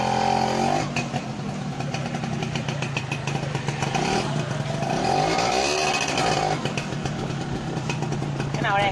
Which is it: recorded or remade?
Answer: recorded